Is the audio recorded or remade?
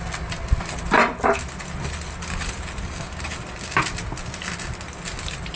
recorded